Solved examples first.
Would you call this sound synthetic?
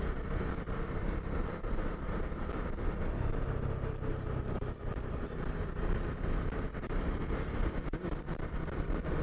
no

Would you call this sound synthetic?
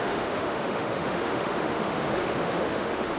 yes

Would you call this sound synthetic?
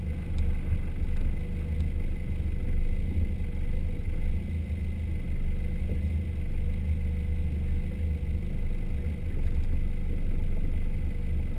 no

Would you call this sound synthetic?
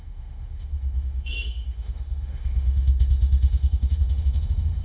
yes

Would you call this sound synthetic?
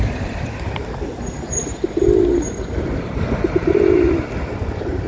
no